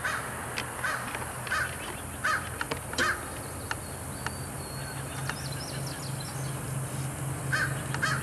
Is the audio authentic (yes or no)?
yes